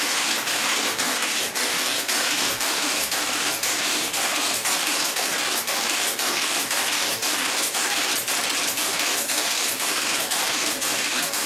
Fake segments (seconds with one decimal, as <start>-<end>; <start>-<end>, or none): 0.0-8.1; 8.7-11.5